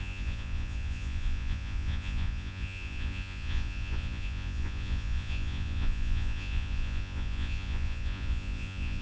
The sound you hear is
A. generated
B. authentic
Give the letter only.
A